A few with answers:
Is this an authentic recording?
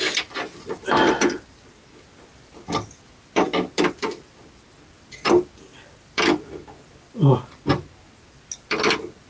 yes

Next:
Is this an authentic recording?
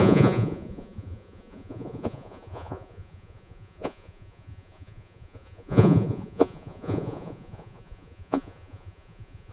no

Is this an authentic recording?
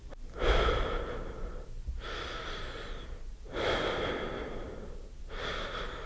yes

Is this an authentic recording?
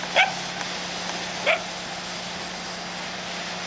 yes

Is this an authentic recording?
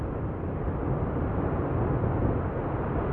yes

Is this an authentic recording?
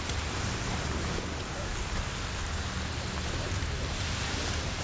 yes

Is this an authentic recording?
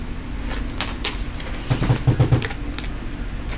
yes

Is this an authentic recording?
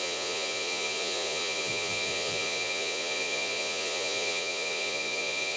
no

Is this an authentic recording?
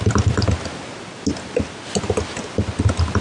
yes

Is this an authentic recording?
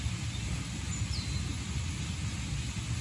yes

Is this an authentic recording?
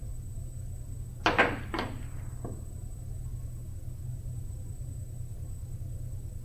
yes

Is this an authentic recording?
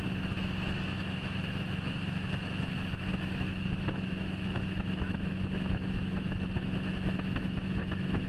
no